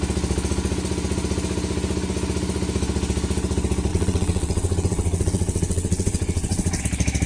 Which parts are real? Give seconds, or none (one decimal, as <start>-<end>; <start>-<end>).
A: 0.0-3.9; 6.8-7.3